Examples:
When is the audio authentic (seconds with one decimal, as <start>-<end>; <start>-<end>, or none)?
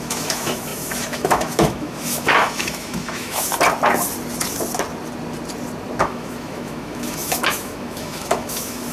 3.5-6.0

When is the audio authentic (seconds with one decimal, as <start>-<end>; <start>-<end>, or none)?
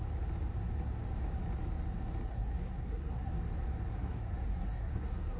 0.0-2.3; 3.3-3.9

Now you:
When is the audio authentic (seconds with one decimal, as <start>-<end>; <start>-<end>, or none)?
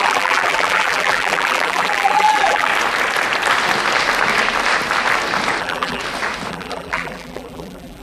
2.7-5.6; 6.0-6.5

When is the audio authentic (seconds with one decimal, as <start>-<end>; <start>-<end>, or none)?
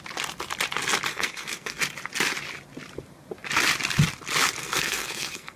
0.0-1.1; 1.8-4.6